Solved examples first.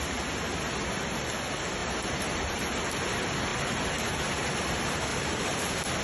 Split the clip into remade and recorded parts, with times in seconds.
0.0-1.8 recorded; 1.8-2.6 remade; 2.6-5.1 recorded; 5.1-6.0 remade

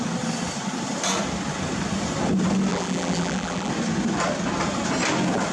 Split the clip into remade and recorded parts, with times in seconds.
0.0-2.7 recorded; 2.7-3.7 remade; 3.7-5.5 recorded